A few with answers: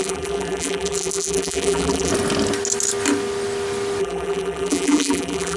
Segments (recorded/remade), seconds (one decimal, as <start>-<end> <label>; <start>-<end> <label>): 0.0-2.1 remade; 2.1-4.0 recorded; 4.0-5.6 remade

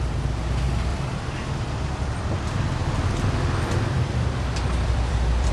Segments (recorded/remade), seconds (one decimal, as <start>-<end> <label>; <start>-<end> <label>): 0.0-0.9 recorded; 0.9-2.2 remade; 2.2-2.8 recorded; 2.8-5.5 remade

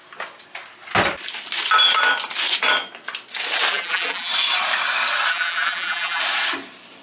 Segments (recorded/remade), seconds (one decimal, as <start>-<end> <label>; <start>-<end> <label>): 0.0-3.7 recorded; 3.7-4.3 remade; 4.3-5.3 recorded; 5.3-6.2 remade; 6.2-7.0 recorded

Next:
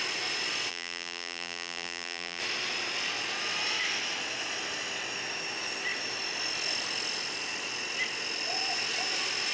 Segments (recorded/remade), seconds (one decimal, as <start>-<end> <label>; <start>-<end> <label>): 0.0-0.7 recorded; 0.7-2.4 remade; 2.4-9.5 recorded